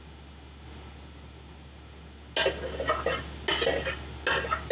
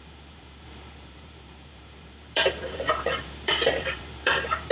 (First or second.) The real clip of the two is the first